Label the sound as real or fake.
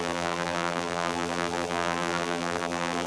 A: fake